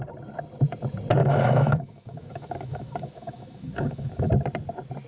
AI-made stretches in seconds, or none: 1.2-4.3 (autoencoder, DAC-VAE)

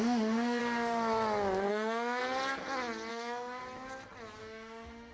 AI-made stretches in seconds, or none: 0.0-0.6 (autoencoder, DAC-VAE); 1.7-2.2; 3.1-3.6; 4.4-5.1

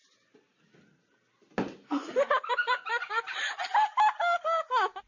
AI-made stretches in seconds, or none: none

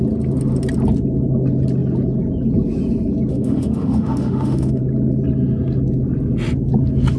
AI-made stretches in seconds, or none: 3.3-4.8 (autoencoder, DAC-VAE)

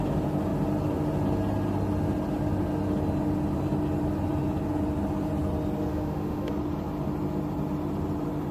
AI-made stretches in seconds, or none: 5.9-6.5 (autoencoder, DAC-VAE)

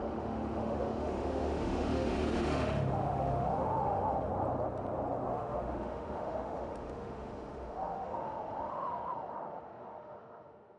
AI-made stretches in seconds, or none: 0.0-4.3 (autoencoder, DAC-VAE); 5.3-10.8

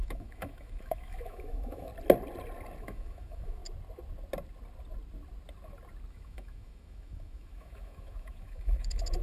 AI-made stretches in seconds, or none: 0.0-1.9 (autoencoder, DAC-VAE); 2.8-3.6; 6.1-9.2

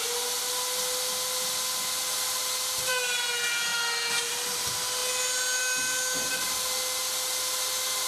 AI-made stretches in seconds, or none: none